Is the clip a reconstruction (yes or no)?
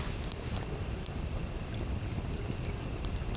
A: no